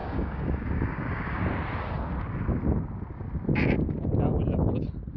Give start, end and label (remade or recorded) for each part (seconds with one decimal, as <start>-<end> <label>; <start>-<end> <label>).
0.0-1.4 remade; 1.4-5.2 recorded